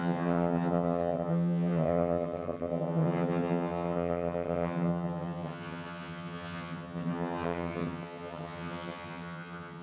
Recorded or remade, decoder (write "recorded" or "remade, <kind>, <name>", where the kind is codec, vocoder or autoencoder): remade, vocoder, HiFi-GAN